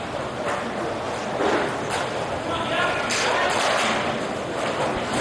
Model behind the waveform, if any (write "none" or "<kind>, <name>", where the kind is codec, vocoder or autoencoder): none